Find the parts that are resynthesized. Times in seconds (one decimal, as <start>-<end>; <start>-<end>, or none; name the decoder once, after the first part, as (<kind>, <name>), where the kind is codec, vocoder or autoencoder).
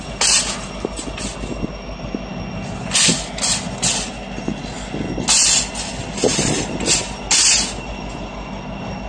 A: none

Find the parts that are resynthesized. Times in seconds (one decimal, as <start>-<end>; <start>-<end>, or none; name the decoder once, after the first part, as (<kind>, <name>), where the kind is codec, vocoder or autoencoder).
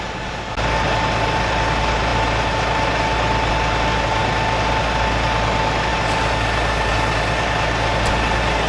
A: none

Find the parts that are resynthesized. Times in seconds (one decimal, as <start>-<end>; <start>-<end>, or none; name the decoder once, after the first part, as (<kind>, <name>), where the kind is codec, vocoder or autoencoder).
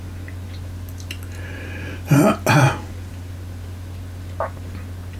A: none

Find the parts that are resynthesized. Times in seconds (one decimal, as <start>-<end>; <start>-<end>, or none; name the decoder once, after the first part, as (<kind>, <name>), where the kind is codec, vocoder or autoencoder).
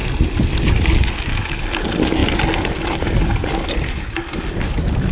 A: none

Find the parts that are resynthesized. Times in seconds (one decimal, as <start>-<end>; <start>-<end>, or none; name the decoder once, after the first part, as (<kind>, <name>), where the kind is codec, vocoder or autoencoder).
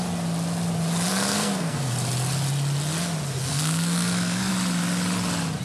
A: 1.1-1.9 (codec, SNAC); 3.5-4.5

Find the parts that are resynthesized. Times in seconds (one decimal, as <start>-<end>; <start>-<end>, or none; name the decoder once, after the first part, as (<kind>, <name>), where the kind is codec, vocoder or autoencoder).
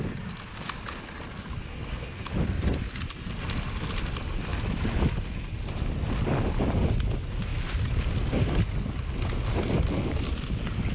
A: 1.7-2.3 (codec, SNAC)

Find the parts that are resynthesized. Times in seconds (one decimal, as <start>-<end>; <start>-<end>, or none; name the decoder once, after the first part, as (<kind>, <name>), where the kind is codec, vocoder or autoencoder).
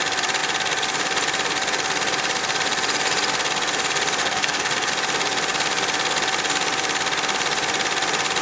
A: 4.2-4.9 (codec, SNAC)